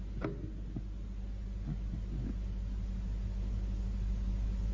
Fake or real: real